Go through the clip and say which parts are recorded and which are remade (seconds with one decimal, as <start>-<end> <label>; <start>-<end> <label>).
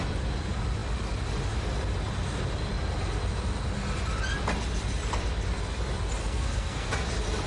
0.0-6.2 recorded; 6.2-6.9 remade; 6.9-7.5 recorded